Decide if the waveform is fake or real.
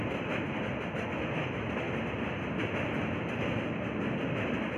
real